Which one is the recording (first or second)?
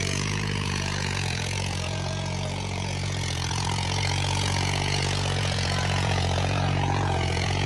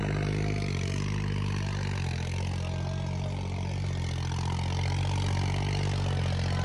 second